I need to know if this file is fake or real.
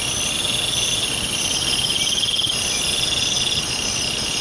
real